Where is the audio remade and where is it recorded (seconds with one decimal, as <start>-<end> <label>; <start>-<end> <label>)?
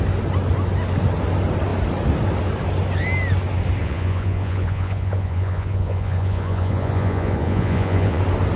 0.0-3.8 recorded; 3.8-8.2 remade; 8.2-8.6 recorded